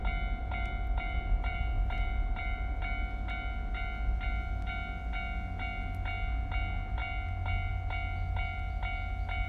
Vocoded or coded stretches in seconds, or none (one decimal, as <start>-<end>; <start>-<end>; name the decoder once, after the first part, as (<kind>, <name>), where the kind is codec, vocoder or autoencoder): 0.4-2.7 (vocoder, BigVGAN v2)